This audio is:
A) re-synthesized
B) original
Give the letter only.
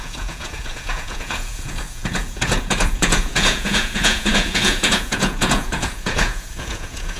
A